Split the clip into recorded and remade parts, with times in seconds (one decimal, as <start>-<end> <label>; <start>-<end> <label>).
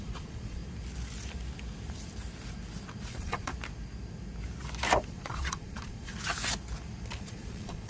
0.0-0.6 remade; 0.6-3.1 recorded; 3.1-3.5 remade; 3.5-5.1 recorded; 5.1-6.1 remade; 6.1-7.2 recorded; 7.2-7.9 remade